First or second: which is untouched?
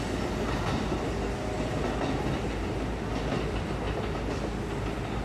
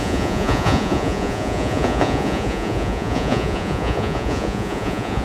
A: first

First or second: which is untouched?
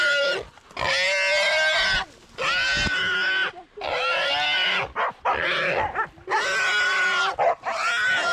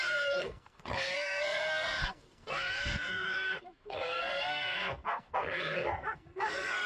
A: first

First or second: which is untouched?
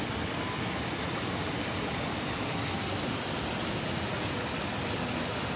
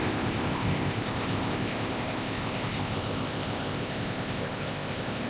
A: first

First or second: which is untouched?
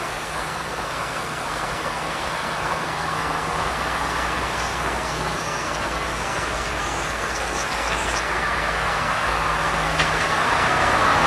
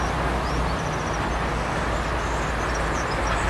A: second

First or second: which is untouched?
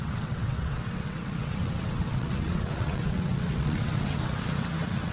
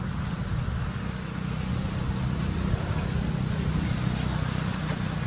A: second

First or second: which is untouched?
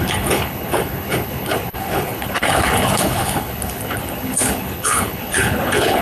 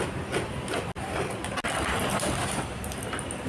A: second